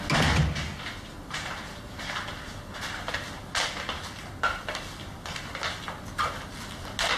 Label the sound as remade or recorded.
recorded